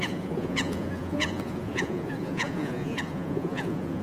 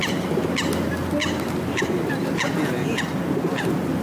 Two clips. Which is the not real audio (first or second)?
first